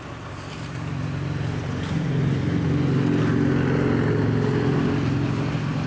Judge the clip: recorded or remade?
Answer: recorded